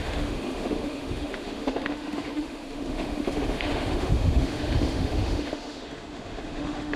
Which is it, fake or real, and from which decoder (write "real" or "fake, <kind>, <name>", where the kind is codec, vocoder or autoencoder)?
fake, autoencoder, DAC-VAE